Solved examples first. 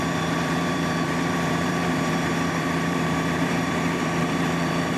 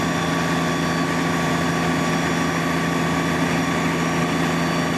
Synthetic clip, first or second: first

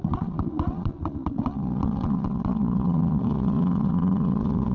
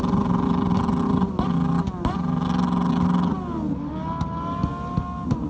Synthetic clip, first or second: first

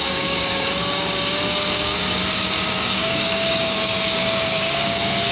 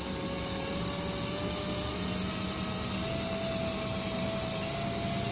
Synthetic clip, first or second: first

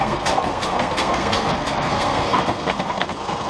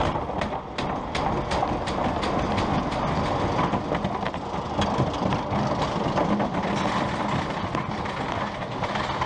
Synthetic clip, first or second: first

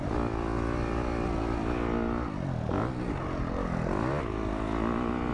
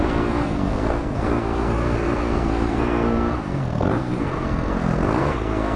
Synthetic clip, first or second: second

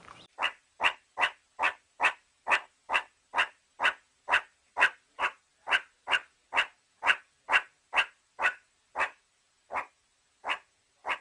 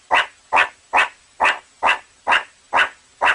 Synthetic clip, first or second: first